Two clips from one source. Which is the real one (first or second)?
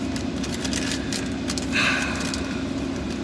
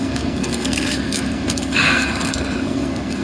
first